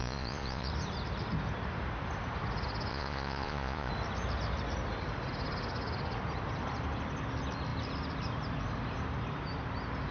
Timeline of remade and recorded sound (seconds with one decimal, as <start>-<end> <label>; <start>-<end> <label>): 0.0-0.7 remade; 0.7-2.9 recorded; 2.9-3.9 remade; 3.9-10.1 recorded